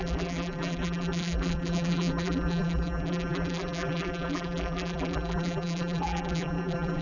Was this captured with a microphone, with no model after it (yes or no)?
no